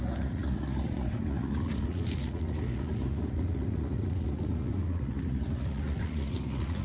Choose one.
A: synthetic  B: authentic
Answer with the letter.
A